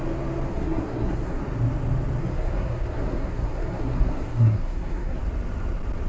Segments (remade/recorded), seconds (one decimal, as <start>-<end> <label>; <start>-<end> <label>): 0.0-0.5 recorded; 0.5-1.4 remade; 1.4-2.2 recorded; 2.2-5.2 remade; 5.2-6.1 recorded